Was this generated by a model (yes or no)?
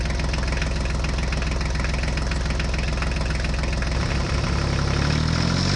no